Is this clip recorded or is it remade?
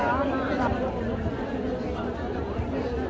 recorded